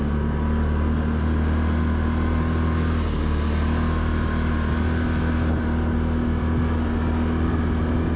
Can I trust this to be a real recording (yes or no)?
yes